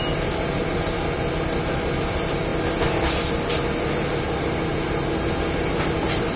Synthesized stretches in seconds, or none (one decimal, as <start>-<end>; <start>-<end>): none